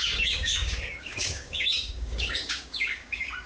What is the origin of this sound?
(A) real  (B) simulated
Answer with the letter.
B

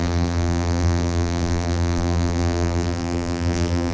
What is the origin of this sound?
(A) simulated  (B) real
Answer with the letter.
A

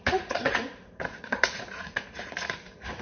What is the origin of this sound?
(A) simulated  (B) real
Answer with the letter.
A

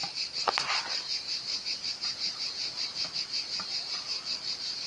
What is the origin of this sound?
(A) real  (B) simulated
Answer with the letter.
A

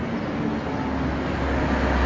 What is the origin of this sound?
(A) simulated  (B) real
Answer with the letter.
B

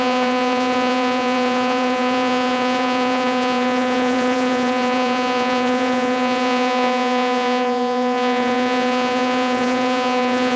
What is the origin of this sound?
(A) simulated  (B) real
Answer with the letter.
A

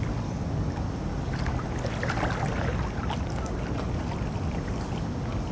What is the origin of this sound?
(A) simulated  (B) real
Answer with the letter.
B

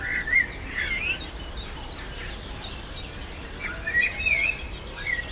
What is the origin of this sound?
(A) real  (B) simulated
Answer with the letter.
A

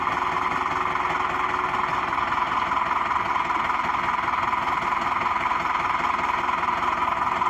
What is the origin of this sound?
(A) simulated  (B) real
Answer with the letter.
B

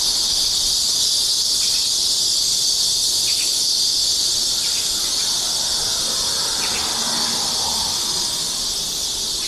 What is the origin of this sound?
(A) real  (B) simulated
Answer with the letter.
A